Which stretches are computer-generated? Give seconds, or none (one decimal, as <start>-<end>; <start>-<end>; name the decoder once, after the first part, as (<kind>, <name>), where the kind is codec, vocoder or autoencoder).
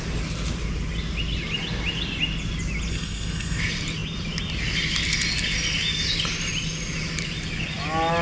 2.9-3.6 (codec, SNAC)